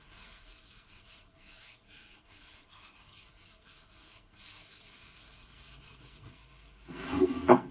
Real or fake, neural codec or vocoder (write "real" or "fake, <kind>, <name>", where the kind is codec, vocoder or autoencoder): fake, codec, SNAC